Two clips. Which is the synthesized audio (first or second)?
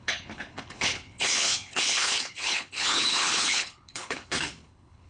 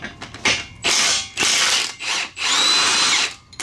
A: first